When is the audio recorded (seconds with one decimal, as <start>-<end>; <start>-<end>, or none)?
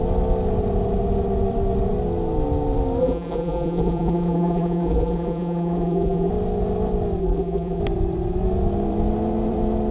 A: 0.0-3.0; 6.3-7.2; 7.8-9.9